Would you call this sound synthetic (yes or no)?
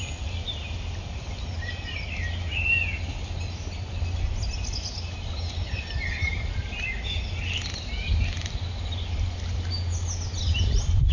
no